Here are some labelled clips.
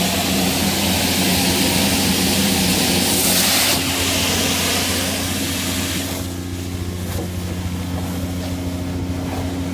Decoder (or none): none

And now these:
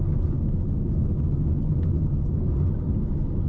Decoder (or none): none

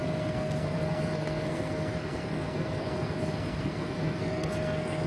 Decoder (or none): codec, SNAC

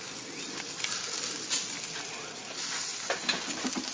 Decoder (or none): none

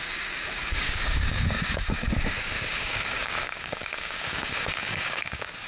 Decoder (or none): codec, DAC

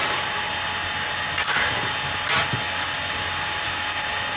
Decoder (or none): none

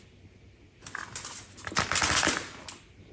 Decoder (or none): none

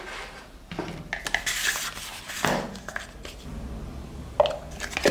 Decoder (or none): none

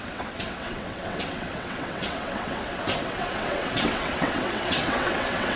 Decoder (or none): vocoder, WaveNeXt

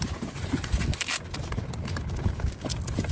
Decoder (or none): none